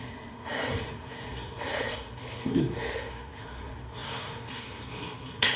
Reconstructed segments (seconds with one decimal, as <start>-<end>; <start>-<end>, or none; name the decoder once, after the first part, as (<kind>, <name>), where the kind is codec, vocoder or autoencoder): 0.0-5.6 (codec, SNAC)